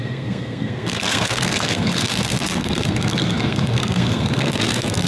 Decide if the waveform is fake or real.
fake